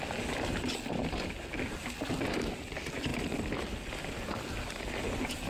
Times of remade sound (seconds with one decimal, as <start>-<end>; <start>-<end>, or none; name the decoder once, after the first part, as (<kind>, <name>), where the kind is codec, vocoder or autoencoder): none